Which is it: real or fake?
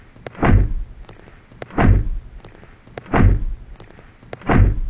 real